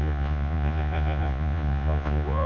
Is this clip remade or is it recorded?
remade